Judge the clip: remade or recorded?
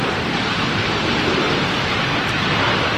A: recorded